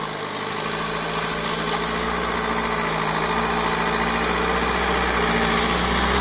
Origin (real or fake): real